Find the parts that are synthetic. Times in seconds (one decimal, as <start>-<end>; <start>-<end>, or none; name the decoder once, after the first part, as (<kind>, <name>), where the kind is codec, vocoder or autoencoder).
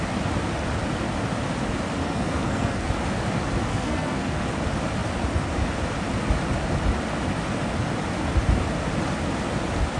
2.0-2.9 (codec, SNAC); 3.7-4.5